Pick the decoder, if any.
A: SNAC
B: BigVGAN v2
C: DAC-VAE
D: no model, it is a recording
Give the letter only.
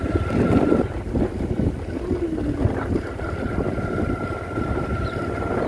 D